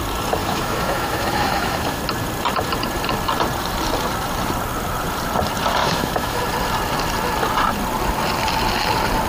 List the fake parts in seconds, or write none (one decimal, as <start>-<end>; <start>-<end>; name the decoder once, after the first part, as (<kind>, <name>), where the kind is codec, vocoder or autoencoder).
0.4-2.0 (autoencoder, DAC-VAE); 5.8-6.4